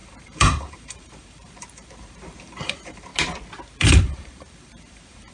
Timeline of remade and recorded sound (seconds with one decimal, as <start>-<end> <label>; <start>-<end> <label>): 0.0-3.1 remade; 3.1-3.8 recorded; 3.8-5.3 remade